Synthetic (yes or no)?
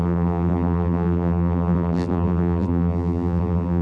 yes